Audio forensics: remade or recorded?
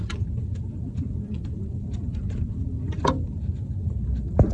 recorded